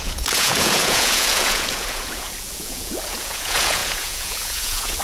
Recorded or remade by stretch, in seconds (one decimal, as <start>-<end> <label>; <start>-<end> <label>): 0.0-5.0 remade